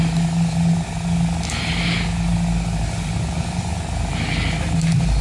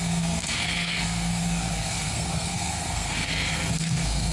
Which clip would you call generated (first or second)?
second